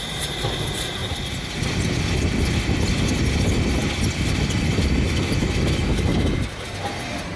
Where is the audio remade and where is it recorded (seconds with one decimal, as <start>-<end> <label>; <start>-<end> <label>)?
0.0-1.0 recorded; 1.0-2.0 remade; 2.0-6.1 recorded; 6.1-6.7 remade; 6.7-7.4 recorded